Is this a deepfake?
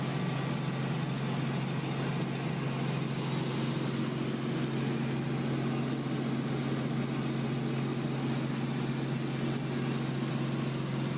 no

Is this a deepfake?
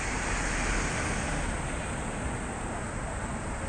no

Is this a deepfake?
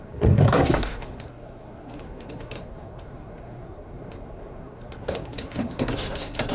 yes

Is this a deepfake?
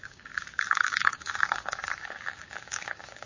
yes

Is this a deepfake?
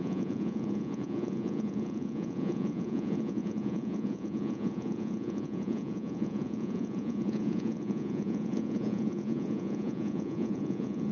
yes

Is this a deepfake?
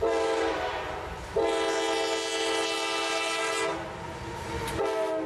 no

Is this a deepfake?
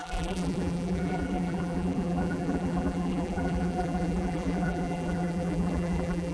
yes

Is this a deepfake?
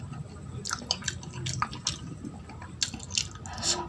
no